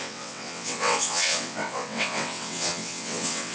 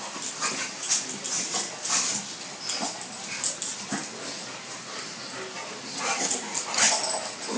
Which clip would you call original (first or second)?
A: second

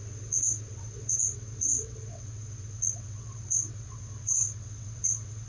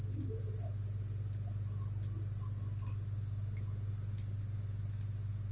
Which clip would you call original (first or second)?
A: second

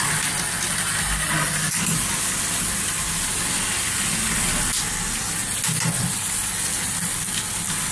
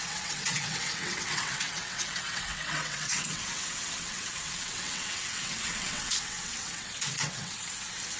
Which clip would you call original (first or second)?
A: first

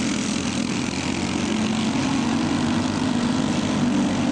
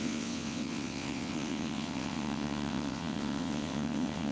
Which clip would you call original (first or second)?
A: first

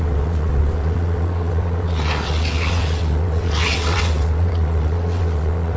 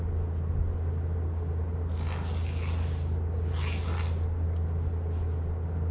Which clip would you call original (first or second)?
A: second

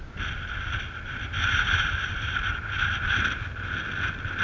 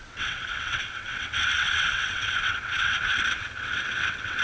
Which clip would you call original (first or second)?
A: first